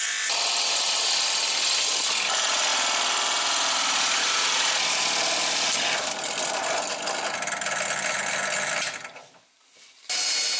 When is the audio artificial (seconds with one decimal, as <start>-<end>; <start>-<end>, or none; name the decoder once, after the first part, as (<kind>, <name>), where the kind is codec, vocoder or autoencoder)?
none